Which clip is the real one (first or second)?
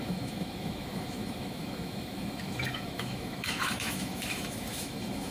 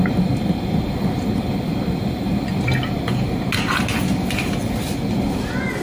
second